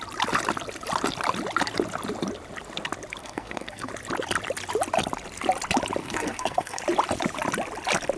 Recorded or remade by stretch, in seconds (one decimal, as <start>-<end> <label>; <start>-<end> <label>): 0.0-3.2 recorded; 3.2-3.9 remade; 3.9-6.0 recorded; 6.0-6.8 remade; 6.8-8.2 recorded